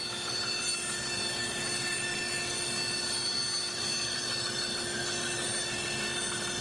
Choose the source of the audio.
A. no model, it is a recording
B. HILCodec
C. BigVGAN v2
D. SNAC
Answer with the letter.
A